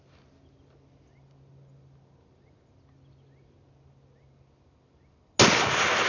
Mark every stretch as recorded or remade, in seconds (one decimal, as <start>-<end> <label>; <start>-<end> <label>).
0.0-6.1 recorded